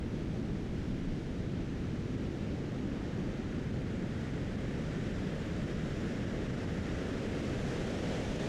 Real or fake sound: real